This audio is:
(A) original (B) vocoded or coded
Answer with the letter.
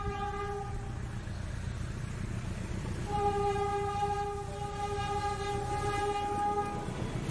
A